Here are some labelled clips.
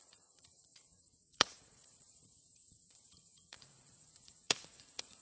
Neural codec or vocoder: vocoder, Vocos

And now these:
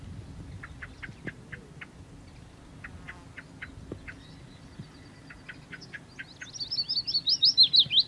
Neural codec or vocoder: none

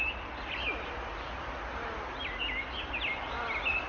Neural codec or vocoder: none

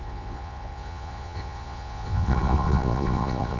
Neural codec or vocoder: vocoder, Vocos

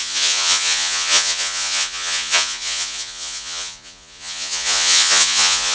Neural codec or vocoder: vocoder, Vocos